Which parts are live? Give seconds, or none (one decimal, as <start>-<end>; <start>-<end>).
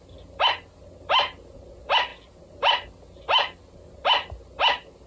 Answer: 0.0-5.1